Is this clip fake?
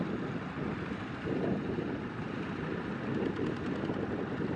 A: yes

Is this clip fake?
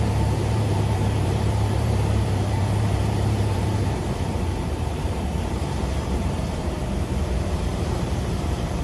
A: yes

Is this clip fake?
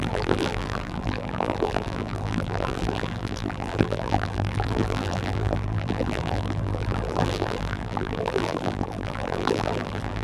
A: yes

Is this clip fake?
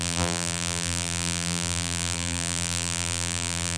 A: yes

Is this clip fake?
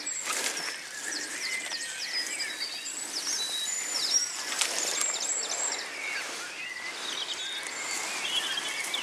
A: no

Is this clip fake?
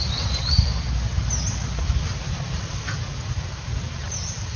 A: yes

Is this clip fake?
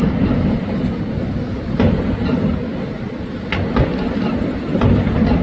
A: no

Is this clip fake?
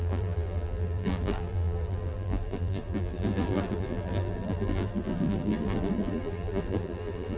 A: yes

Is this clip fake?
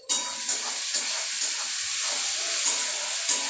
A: no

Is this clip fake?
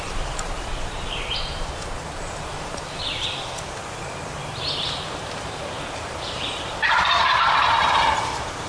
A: yes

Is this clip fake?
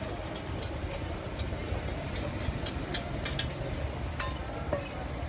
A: no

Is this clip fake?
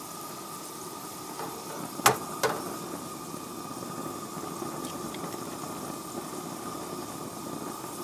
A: no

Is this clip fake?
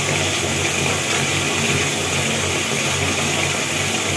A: no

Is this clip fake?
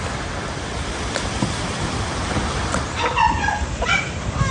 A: yes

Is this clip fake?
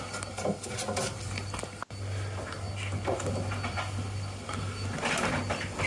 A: no